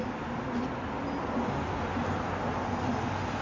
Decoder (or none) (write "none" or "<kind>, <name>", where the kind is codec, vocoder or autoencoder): none